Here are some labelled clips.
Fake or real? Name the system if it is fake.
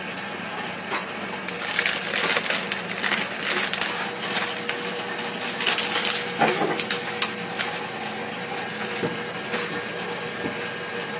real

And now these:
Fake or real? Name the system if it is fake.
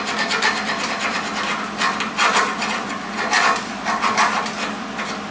real